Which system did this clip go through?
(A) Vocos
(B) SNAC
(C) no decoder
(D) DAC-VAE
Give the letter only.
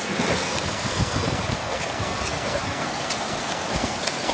B